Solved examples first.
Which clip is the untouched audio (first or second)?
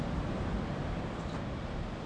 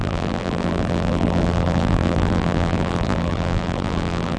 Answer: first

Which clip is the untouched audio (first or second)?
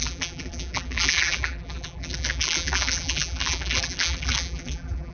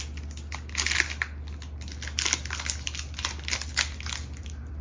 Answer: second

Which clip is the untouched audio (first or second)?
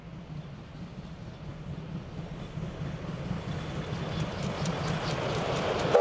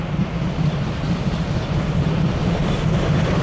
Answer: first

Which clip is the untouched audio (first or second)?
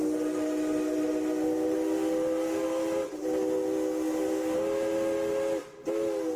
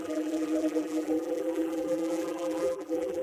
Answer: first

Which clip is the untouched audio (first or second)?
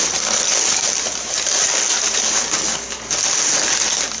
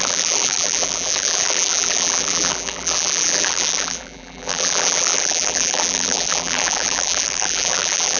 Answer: first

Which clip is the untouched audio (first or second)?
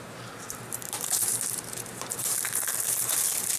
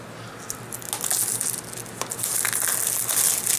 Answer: second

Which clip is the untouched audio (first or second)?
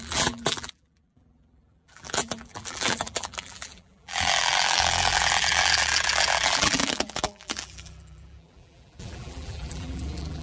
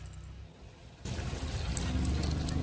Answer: second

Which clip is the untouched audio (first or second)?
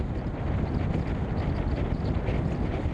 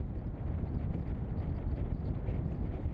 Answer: first